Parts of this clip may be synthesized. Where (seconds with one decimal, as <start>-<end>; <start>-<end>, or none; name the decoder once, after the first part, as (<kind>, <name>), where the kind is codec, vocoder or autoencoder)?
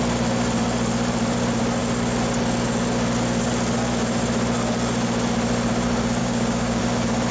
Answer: 6.2-6.8 (codec, DAC)